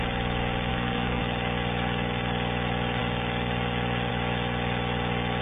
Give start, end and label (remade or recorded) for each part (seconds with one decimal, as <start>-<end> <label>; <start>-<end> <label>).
0.0-0.7 recorded; 0.7-1.2 remade; 1.2-5.4 recorded